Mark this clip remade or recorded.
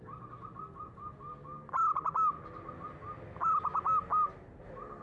recorded